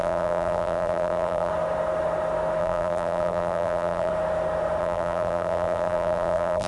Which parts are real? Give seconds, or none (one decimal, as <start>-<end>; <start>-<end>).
1.5-2.6; 4.1-4.8